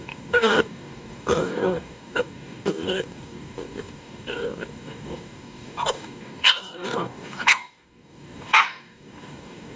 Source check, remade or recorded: remade